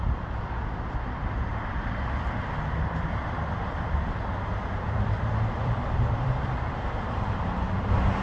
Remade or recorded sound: remade